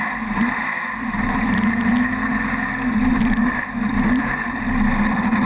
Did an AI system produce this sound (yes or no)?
yes